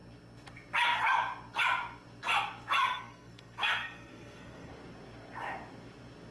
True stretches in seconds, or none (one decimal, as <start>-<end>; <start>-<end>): 0.0-2.8; 4.7-6.3